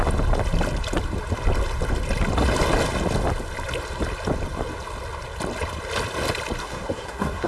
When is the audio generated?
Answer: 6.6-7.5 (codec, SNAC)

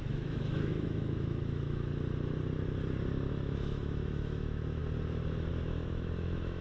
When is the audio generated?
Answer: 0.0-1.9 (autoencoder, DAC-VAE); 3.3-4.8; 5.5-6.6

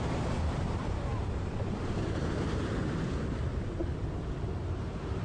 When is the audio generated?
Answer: 0.0-3.8 (vocoder, BigVGAN v2); 4.6-5.2

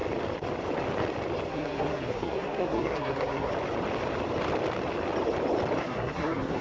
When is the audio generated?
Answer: 1.5-3.5 (codec, SNAC); 5.8-6.6

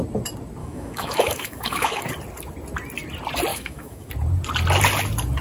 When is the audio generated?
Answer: 0.6-2.0 (autoencoder, DAC-VAE); 3.5-4.1

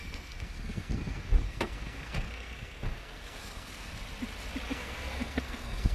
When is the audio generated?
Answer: 0.0-3.9 (codec, SNAC); 4.7-5.9